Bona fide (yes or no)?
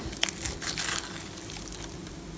yes